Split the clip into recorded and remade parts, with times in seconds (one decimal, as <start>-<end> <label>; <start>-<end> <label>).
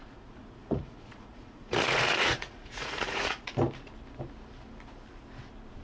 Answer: 0.0-3.5 remade; 3.5-5.8 recorded